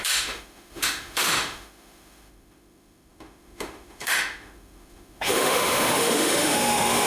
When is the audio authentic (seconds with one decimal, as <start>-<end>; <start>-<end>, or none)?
none